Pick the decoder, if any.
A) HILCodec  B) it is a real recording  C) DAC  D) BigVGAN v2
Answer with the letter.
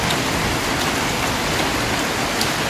B